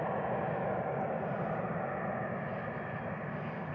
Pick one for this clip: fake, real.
real